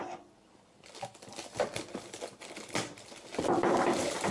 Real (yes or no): yes